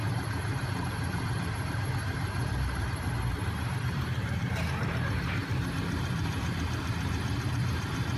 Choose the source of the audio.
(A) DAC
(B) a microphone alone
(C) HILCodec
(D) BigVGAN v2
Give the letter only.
D